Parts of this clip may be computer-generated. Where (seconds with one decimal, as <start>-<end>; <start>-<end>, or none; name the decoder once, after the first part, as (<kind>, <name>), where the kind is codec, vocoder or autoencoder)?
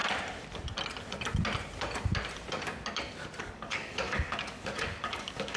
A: 3.4-5.6 (codec, DAC)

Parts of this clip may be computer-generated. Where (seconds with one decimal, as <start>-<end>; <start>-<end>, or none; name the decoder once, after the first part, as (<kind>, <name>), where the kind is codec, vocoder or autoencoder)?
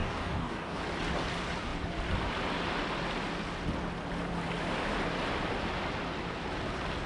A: 0.0-0.8 (codec, DAC)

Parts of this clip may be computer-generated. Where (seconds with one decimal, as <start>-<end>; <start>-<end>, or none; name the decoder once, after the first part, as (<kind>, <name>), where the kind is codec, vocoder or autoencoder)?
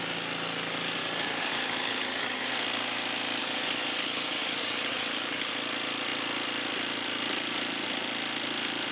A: 1.0-2.5 (codec, DAC); 3.4-5.5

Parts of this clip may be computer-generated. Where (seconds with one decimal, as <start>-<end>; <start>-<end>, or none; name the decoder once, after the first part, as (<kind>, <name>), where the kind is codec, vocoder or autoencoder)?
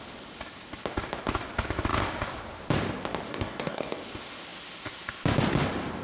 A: 3.3-4.0 (codec, DAC)